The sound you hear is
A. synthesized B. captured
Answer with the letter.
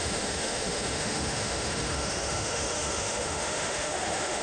A